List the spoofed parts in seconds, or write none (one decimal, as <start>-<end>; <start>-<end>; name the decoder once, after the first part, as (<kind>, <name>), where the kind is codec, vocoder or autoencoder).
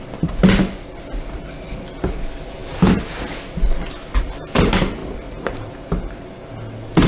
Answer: 2.6-3.6 (vocoder, BigVGAN v2); 5.0-5.7